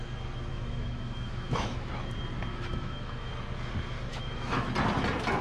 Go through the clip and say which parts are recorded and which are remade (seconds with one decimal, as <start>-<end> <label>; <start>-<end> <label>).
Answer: 0.0-0.5 recorded; 0.5-1.9 remade; 1.9-2.5 recorded; 2.5-3.3 remade; 3.3-4.1 recorded; 4.1-4.7 remade; 4.7-5.4 recorded